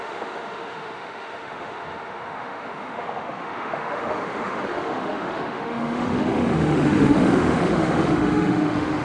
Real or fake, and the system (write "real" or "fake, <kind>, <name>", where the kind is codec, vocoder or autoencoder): fake, autoencoder, DAC-VAE